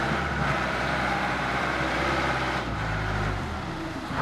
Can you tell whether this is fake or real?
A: fake